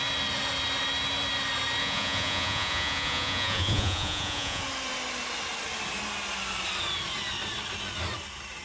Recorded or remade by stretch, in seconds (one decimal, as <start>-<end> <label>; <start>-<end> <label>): 0.0-1.8 recorded; 1.8-4.6 remade; 4.6-8.6 recorded